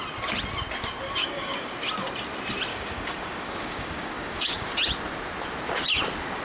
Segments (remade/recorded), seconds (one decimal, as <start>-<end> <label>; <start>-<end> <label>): 0.0-1.2 recorded; 1.2-1.7 remade; 1.7-2.7 recorded; 2.7-4.7 remade; 4.7-6.4 recorded